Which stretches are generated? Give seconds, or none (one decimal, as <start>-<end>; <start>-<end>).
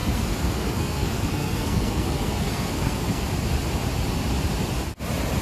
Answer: 0.0-3.2